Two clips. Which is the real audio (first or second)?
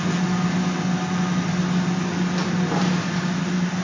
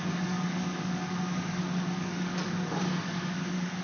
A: first